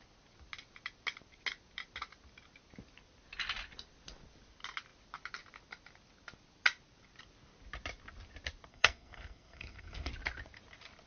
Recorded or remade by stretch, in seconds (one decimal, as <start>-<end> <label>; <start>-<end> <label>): 0.0-8.7 recorded; 8.7-10.1 remade; 10.1-11.1 recorded

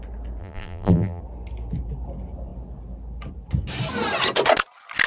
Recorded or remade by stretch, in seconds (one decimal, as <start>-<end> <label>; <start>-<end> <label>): 0.0-0.4 recorded; 0.4-1.2 remade; 1.2-5.1 recorded

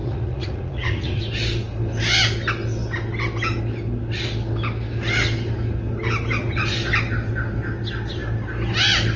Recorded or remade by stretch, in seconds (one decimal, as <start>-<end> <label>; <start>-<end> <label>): 0.0-1.2 remade; 1.2-9.2 recorded

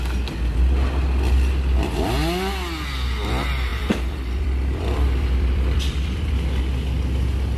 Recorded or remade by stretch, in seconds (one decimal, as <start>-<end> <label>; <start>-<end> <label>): 0.0-3.7 recorded; 3.7-6.6 remade; 6.6-7.6 recorded

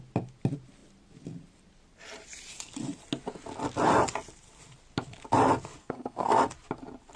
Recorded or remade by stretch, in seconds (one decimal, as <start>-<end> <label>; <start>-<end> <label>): 0.0-5.8 recorded; 5.8-6.4 remade; 6.4-7.2 recorded